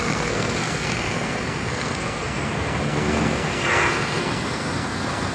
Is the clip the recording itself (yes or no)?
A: no